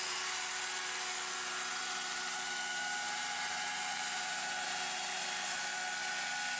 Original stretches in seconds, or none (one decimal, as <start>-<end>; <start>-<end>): 0.0-1.8; 5.8-6.6